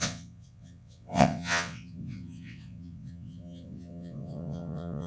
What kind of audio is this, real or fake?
fake